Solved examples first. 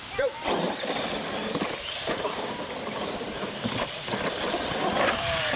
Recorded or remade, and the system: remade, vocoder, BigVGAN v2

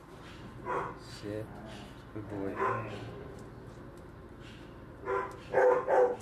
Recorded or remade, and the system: recorded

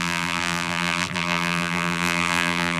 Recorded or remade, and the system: remade, vocoder, BigVGAN v2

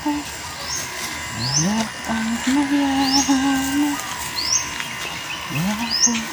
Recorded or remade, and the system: recorded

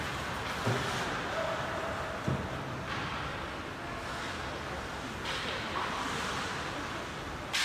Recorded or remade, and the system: recorded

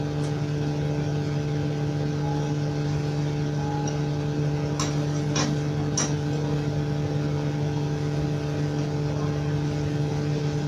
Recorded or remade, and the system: recorded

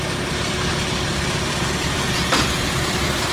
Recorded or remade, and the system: remade, vocoder, BigVGAN v2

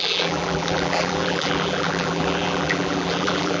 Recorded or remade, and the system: remade, vocoder, BigVGAN v2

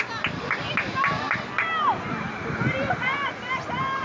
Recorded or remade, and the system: recorded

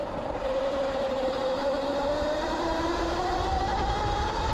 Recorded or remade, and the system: remade, vocoder, BigVGAN v2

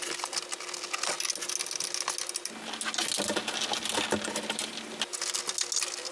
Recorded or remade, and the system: recorded